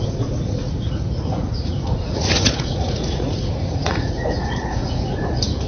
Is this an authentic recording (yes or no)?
no